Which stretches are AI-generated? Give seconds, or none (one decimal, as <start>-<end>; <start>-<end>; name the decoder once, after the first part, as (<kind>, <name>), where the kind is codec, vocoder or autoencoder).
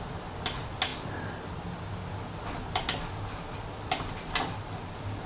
none